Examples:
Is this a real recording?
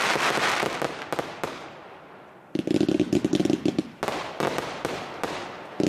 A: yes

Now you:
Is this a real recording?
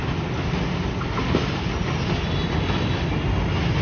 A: yes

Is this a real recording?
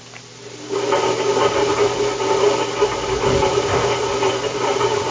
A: yes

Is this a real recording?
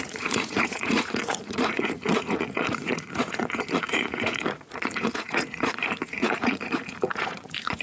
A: no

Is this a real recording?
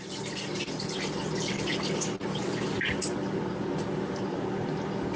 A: no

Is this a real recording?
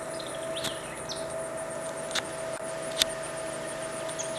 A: yes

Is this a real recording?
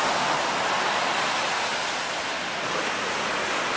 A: yes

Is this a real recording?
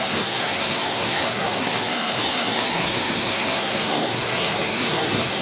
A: no